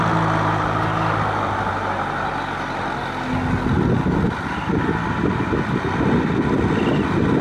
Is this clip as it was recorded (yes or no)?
yes